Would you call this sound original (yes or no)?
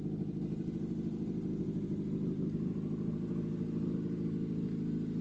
yes